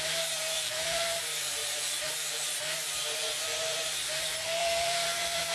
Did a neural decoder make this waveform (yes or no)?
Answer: yes